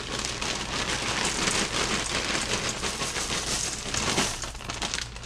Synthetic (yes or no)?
no